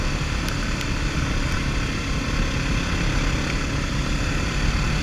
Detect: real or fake real